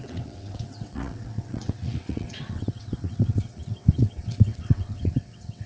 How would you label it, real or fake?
fake